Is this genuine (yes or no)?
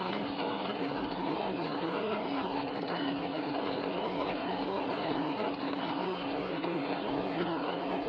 no